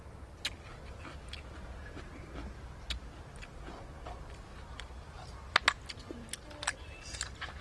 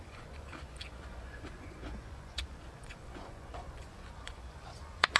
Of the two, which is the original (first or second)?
first